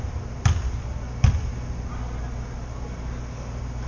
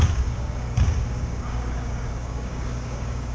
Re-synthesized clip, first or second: second